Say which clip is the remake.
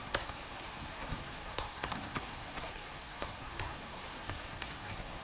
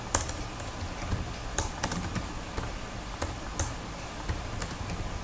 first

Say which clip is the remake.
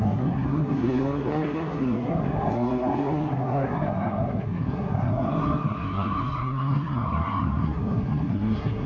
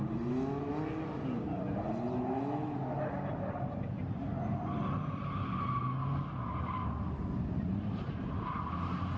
first